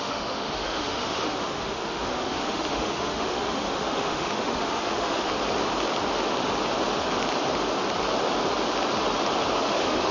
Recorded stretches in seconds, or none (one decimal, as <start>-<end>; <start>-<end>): 5.3-9.6